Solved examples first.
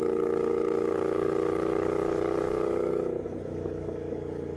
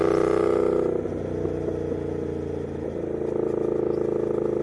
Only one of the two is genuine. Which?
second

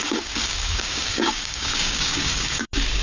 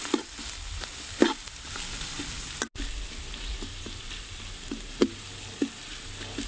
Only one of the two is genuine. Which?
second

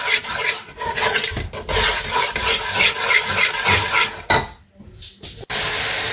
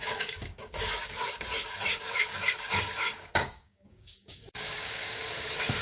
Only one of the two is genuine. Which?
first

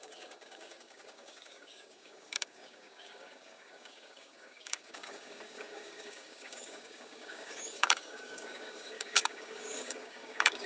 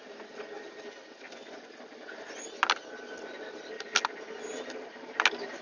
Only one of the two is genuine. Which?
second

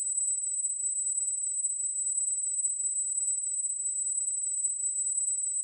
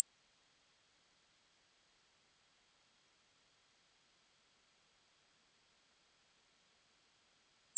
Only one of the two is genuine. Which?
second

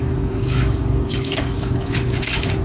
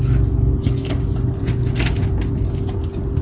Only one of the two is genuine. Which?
second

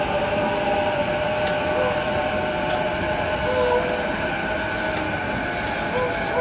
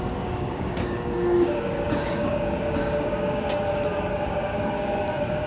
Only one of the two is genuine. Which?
first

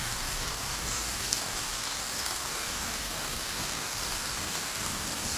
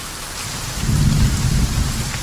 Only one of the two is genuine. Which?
second